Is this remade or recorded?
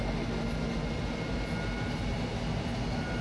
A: recorded